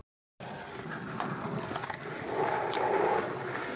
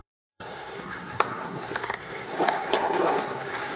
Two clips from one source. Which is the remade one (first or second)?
second